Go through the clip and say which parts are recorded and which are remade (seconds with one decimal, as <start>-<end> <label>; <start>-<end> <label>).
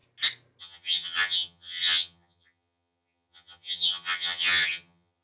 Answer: 0.0-0.6 recorded; 0.6-5.2 remade